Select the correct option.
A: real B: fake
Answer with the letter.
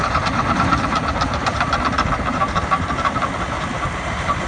B